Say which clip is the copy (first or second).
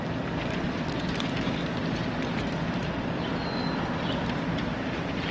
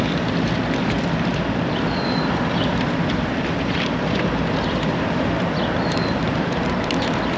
second